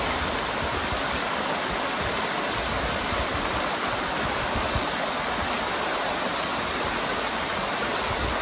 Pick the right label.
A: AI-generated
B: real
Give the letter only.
B